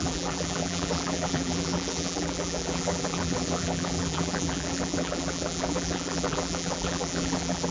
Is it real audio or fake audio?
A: fake